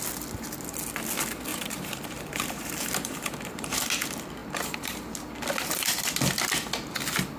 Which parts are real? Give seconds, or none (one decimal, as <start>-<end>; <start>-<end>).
0.0-1.5; 3.8-4.4; 5.0-7.4